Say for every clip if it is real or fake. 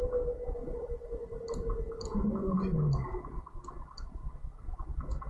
real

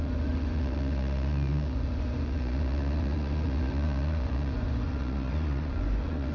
fake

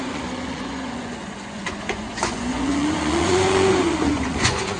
fake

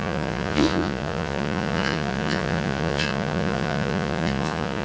fake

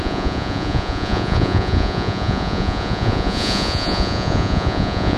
fake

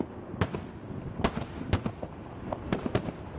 real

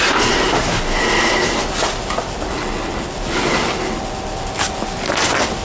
real